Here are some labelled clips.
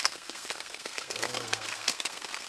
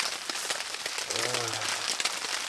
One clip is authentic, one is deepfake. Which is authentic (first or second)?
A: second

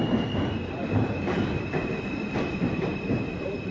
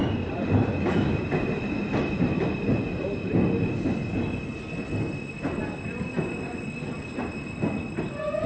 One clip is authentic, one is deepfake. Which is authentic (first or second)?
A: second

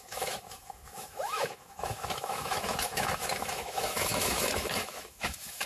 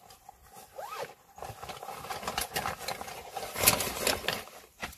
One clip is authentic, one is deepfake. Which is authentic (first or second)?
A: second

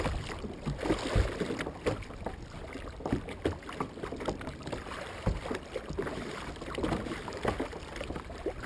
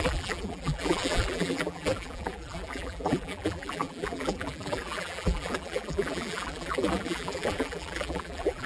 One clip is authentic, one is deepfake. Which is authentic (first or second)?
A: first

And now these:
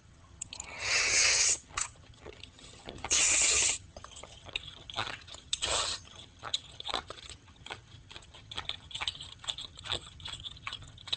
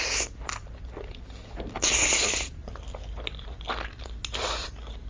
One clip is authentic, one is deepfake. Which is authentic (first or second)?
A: second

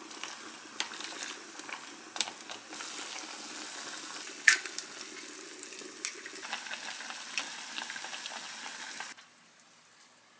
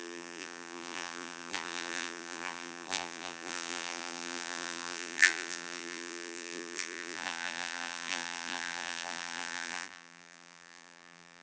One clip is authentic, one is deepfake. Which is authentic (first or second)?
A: first